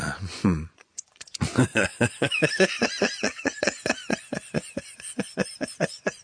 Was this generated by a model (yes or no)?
yes